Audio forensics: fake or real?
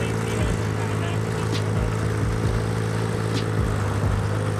real